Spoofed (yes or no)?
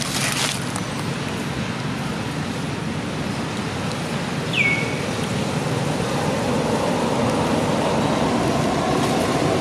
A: no